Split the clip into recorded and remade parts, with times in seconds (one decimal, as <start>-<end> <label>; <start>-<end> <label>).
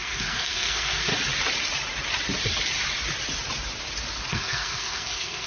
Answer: 0.0-1.1 remade; 1.1-4.3 recorded; 4.3-5.5 remade